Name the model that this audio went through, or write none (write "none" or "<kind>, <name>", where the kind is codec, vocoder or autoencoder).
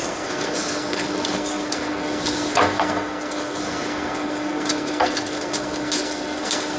codec, SNAC